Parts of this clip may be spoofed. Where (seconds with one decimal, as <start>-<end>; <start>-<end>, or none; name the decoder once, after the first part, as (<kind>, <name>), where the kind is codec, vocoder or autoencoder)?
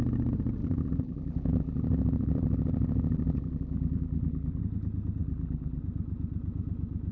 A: 0.6-4.6 (vocoder, BigVGAN v2); 5.2-5.8